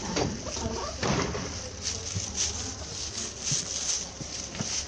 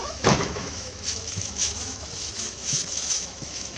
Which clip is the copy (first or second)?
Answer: second